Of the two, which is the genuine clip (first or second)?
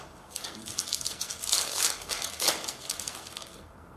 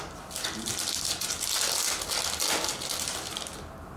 second